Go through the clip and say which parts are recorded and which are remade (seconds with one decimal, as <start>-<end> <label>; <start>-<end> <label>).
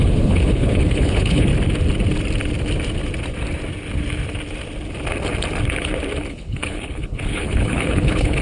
0.0-1.5 remade; 1.5-6.3 recorded; 6.3-8.4 remade